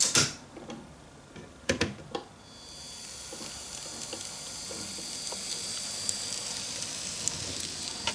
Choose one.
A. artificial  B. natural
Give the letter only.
B